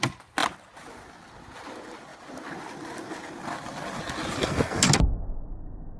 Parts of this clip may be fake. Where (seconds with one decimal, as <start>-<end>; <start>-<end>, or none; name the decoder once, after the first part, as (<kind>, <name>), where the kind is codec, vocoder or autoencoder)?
4.4-4.9 (codec, SNAC)